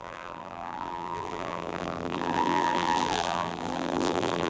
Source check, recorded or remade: remade